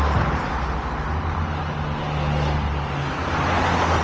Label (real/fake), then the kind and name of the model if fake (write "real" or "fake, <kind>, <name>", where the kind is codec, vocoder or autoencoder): real